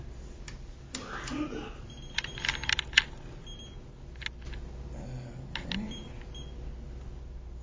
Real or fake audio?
real